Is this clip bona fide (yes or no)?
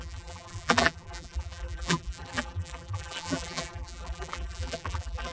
no